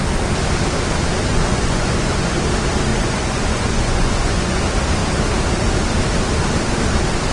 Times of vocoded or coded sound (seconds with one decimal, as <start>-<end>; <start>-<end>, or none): 1.3-2.4; 2.9-4.6